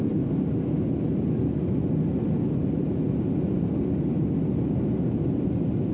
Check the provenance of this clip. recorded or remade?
recorded